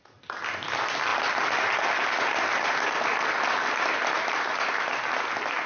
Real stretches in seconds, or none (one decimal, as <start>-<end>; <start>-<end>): 0.0-5.7